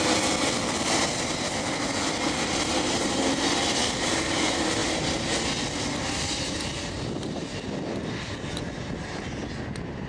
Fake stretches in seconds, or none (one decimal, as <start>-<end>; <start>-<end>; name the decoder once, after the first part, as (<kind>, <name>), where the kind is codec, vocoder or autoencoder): none